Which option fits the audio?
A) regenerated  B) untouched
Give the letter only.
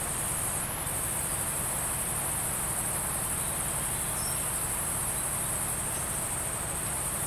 A